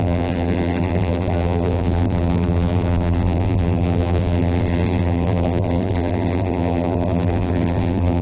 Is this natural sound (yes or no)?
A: no